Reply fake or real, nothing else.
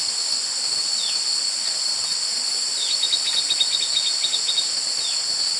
real